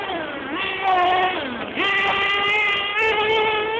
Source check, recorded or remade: recorded